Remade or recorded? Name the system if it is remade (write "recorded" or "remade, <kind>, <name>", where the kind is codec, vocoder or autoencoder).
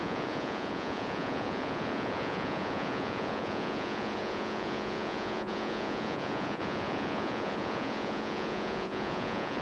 remade, vocoder, Vocos